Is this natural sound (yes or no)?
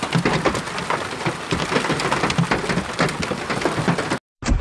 yes